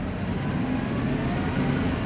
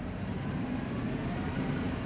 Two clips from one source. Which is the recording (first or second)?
first